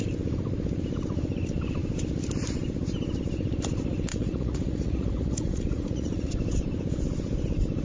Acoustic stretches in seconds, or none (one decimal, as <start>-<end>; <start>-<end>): 0.0-4.1; 6.3-7.8